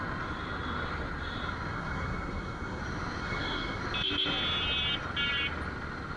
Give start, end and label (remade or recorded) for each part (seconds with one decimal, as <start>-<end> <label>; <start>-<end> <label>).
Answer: 0.0-1.7 recorded; 1.7-2.8 remade; 2.8-3.2 recorded; 3.2-3.8 remade; 3.8-6.2 recorded

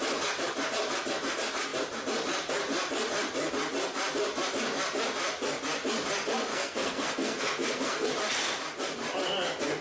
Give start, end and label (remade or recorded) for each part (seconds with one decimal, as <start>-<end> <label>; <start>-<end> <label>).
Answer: 0.0-6.5 recorded; 6.5-8.1 remade; 8.1-9.8 recorded

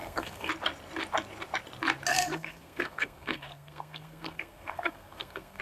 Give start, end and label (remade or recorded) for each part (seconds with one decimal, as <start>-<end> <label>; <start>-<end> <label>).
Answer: 0.0-0.5 remade; 0.5-2.1 recorded; 2.1-5.6 remade

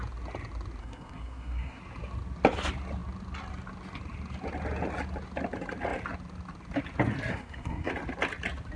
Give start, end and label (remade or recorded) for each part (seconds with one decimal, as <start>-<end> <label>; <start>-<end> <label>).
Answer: 0.0-0.8 recorded; 0.8-1.8 remade; 1.8-7.3 recorded; 7.3-7.9 remade; 7.9-8.8 recorded